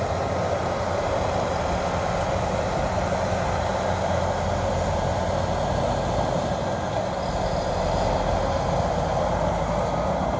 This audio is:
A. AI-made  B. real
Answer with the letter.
B